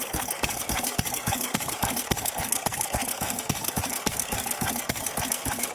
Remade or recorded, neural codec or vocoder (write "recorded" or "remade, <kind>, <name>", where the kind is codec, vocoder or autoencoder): remade, codec, SNAC